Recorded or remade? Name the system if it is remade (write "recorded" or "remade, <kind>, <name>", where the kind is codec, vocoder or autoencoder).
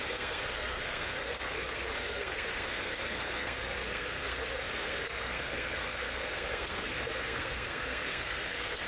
remade, codec, SNAC